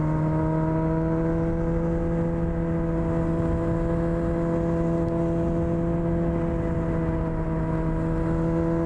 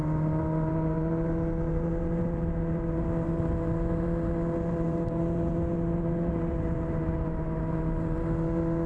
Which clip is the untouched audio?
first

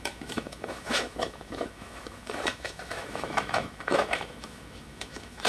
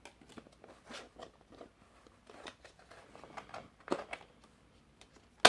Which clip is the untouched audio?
second